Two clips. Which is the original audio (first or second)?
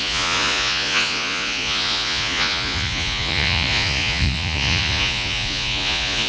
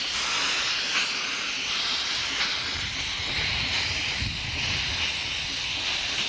second